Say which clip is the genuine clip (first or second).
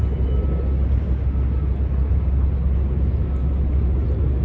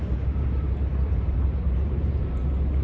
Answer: first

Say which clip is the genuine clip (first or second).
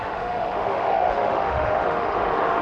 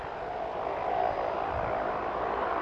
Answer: second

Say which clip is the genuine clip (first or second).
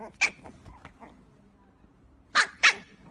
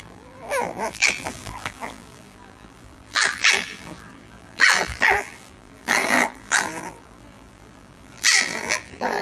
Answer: first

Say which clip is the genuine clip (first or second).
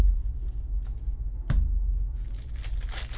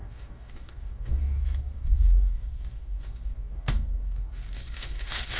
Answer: first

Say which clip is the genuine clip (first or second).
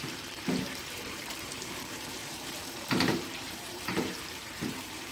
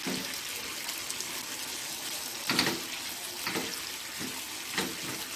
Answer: second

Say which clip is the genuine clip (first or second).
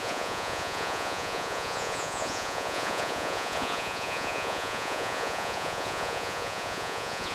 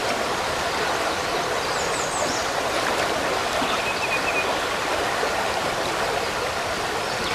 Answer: second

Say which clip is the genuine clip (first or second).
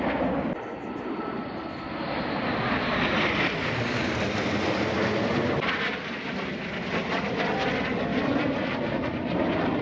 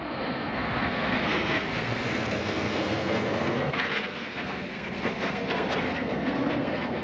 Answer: first